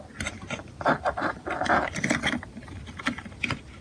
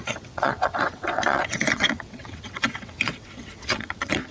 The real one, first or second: first